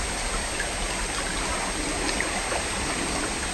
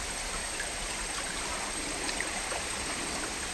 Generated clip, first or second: second